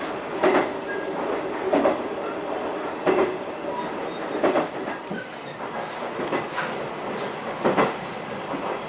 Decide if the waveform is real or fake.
real